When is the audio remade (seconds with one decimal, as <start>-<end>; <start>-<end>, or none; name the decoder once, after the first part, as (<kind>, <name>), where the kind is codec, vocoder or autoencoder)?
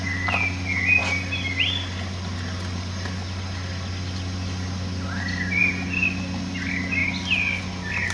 none